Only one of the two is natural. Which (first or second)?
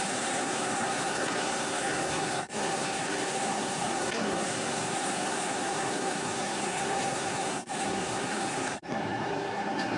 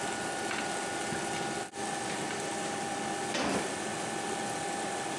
second